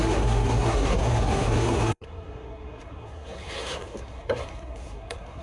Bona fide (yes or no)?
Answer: no